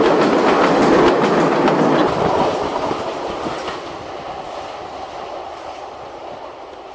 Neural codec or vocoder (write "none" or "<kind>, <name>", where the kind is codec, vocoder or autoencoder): none